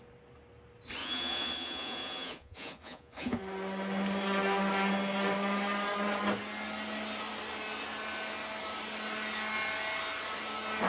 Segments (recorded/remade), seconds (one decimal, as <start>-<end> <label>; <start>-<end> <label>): 0.0-1.0 recorded; 1.0-3.4 remade; 3.4-10.9 recorded